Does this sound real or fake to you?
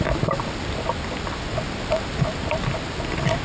real